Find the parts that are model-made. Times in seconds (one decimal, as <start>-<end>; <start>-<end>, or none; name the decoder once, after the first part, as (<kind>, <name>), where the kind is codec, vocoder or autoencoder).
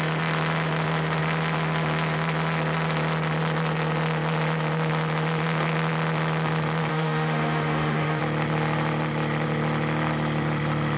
6.9-8.2 (autoencoder, DAC-VAE)